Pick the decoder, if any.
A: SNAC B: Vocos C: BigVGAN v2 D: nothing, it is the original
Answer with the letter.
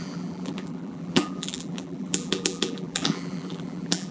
C